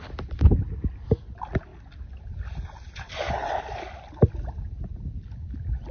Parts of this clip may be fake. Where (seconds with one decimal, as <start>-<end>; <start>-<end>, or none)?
none